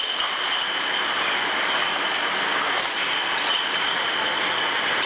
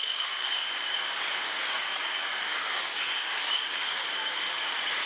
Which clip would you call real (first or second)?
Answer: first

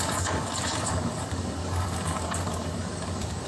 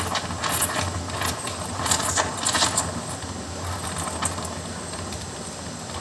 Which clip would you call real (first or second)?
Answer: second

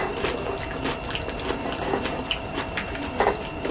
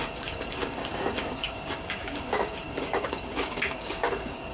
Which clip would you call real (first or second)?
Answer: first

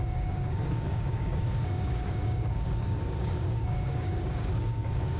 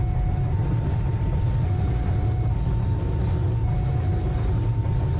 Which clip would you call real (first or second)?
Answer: second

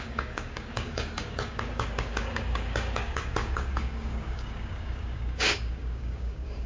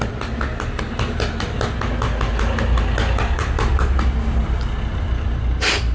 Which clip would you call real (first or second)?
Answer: second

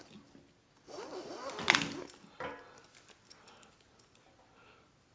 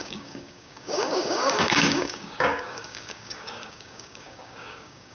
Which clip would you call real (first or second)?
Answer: first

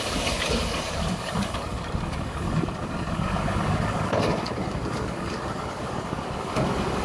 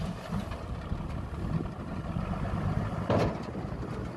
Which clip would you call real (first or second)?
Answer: second